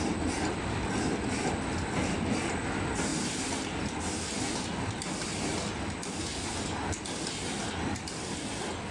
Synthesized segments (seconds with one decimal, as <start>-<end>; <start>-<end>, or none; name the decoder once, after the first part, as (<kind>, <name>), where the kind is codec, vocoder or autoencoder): none